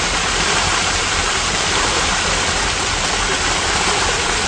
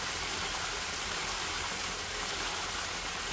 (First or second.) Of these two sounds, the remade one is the first